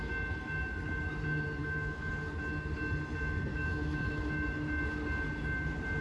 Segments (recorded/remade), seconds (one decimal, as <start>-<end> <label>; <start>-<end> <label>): 0.0-1.6 recorded; 1.6-2.1 remade; 2.1-3.5 recorded; 3.5-4.3 remade; 4.3-6.0 recorded